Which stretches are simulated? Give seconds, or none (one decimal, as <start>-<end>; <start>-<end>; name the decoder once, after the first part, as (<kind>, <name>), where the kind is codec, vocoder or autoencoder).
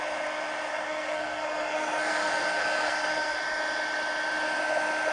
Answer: 0.7-3.4 (codec, SNAC)